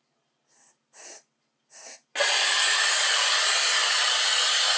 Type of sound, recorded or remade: recorded